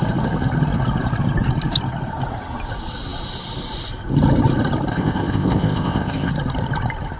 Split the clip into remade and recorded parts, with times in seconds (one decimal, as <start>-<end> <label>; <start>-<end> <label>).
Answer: 0.0-4.9 recorded; 4.9-6.3 remade; 6.3-7.2 recorded